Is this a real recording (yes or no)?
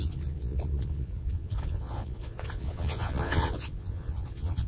no